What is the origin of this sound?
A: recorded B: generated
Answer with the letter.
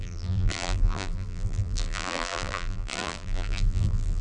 B